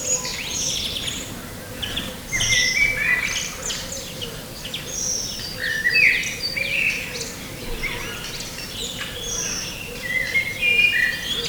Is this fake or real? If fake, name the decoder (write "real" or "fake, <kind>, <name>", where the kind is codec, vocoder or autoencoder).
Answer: real